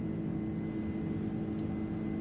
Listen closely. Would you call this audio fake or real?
real